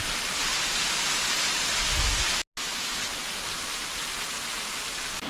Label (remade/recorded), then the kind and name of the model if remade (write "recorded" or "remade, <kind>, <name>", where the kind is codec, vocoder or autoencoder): recorded